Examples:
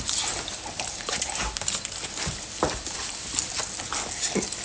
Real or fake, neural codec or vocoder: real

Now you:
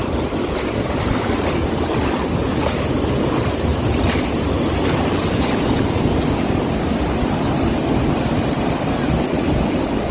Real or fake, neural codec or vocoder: real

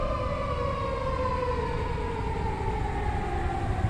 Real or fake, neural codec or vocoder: real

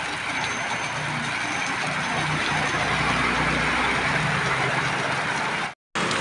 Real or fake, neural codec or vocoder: real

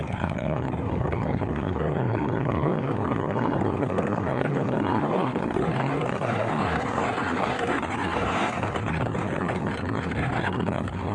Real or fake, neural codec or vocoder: fake, codec, SNAC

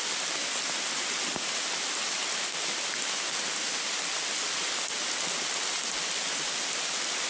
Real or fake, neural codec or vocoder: real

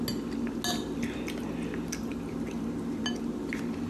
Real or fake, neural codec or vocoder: real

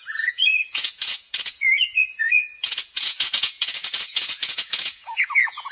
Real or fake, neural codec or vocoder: fake, vocoder, Vocos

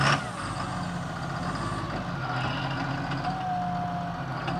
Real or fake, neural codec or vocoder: real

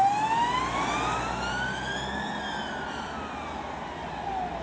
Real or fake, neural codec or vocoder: real